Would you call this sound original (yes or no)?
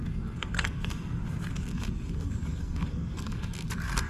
no